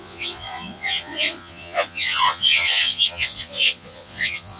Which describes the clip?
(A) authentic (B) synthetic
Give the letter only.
B